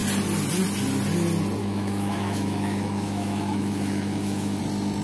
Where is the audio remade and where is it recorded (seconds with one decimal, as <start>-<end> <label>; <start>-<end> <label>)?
0.0-1.6 recorded; 1.6-4.6 remade; 4.6-5.0 recorded